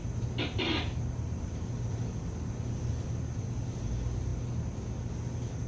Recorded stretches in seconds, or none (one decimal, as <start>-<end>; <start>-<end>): 0.0-5.7

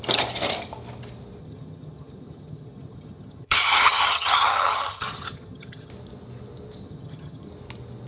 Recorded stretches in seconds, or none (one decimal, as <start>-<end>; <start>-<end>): 0.0-1.4; 5.9-6.8; 7.5-8.1

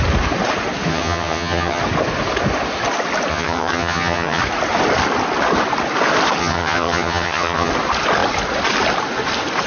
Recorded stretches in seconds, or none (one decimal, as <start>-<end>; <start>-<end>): 0.0-0.9; 1.8-3.3; 4.4-6.4; 7.7-9.7

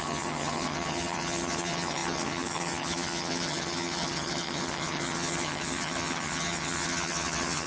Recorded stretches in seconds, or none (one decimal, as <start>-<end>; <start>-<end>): none